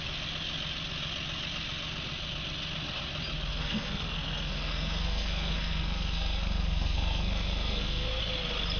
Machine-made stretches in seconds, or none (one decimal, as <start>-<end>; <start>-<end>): 3.5-8.2